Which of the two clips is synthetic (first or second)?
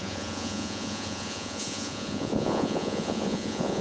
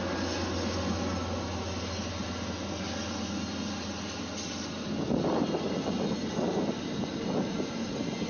first